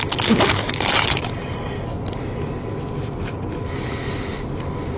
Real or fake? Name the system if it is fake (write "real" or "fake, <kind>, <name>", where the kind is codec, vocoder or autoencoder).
real